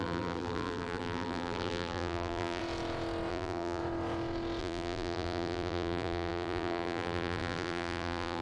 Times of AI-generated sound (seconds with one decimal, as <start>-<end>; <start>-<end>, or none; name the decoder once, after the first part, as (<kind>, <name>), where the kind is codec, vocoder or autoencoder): 0.0-2.6 (vocoder, BigVGAN v2); 3.3-3.8; 4.6-8.4